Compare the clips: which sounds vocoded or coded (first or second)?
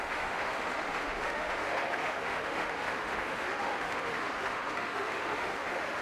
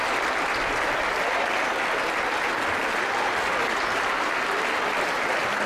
first